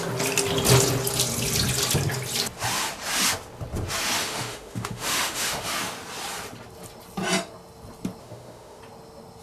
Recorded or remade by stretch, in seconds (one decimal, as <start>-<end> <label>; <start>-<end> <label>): 0.0-4.2 recorded; 4.2-5.7 remade; 5.7-8.2 recorded; 8.2-8.8 remade; 8.8-9.4 recorded